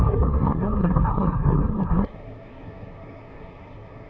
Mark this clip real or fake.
fake